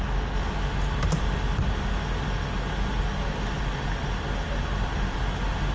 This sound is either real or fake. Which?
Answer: real